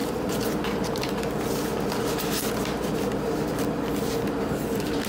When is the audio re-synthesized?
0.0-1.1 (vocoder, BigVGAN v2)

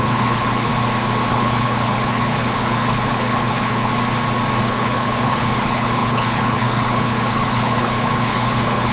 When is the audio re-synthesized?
0.0-0.7 (codec, HILCodec); 1.3-3.9; 4.6-8.9

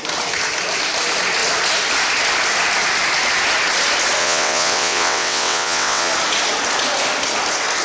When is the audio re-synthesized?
4.2-6.1 (vocoder, WaveNeXt)

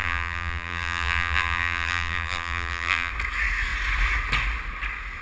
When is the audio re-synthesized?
0.0-3.1 (vocoder, BigVGAN v2)

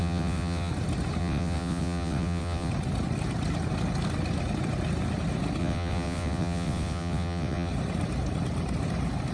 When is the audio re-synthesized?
0.0-0.7 (vocoder, WaveNeXt); 1.2-2.7; 5.6-7.7